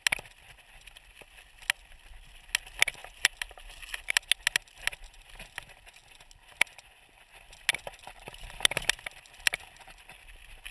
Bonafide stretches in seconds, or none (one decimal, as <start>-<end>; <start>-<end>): 0.0-10.7